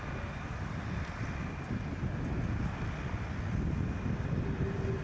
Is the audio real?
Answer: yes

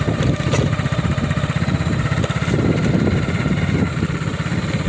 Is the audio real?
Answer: yes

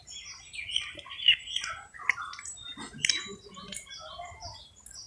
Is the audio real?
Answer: yes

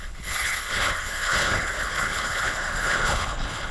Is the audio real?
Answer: no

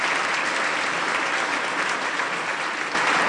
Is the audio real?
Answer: yes